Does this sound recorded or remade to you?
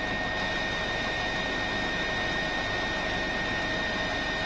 recorded